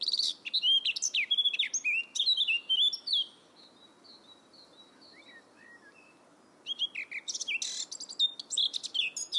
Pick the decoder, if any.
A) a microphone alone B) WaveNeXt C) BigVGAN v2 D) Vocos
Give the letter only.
A